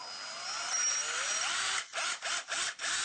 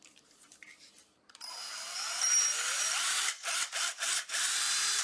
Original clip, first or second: first